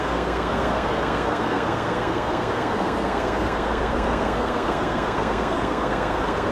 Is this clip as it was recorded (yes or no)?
no